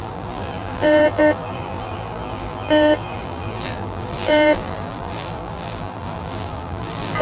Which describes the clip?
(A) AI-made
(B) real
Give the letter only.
A